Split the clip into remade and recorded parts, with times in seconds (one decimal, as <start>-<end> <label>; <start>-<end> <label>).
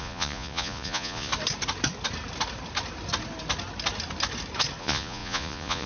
0.0-1.3 remade; 1.3-4.8 recorded; 4.8-5.9 remade